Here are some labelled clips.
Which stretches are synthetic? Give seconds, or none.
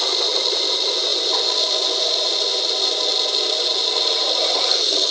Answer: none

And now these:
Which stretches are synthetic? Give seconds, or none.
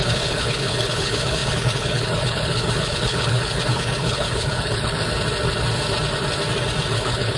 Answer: 0.0-5.0 (codec, HILCodec); 6.9-7.4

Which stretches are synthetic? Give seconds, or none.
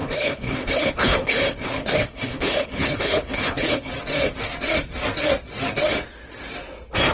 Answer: 0.0-3.9 (codec, HILCodec)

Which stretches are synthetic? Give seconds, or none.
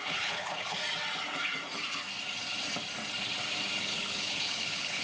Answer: 0.0-0.8 (codec, HILCodec); 3.8-5.0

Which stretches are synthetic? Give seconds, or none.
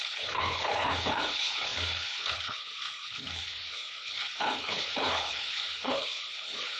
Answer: 0.0-6.8 (codec, HILCodec)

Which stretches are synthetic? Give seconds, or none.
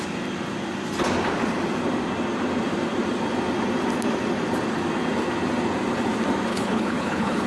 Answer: 6.5-7.5 (codec, HILCodec)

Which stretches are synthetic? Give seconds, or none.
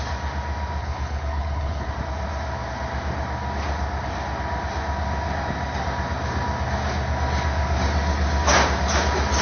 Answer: 0.8-1.9 (codec, HILCodec)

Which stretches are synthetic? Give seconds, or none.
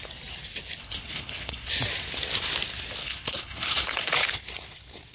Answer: 0.8-1.7 (codec, HILCodec); 3.0-4.1